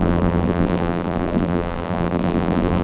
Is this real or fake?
fake